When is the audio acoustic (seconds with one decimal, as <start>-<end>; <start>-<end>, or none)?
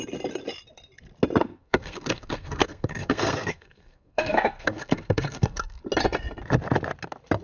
0.0-1.4; 5.8-7.4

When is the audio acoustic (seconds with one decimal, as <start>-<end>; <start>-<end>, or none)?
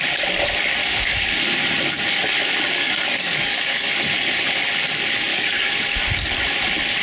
0.0-0.8; 1.5-2.8; 4.0-5.3; 5.8-7.0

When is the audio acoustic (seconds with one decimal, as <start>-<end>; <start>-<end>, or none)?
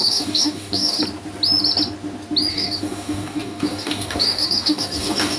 1.0-2.5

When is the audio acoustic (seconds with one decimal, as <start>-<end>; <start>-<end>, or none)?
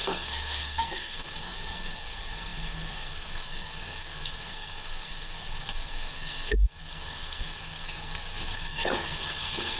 none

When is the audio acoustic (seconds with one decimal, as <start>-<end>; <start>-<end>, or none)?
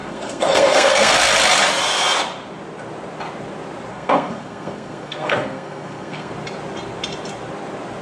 1.1-3.9; 6.3-8.0